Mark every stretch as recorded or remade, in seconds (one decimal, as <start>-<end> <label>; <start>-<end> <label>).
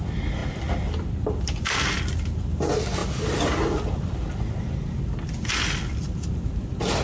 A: 0.0-7.0 recorded